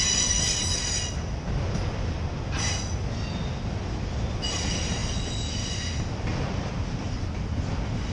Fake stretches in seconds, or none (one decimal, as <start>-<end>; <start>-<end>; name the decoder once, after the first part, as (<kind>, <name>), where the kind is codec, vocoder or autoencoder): none